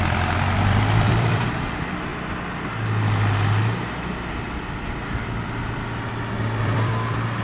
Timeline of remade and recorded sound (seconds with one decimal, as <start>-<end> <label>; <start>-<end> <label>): 0.0-2.1 remade; 2.1-6.2 recorded; 6.2-7.4 remade